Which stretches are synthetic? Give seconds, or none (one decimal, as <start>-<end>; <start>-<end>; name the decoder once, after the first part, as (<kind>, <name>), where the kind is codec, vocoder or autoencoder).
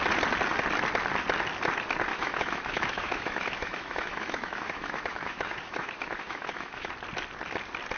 2.1-6.9 (autoencoder, DAC-VAE)